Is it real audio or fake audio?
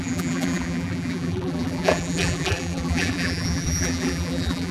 fake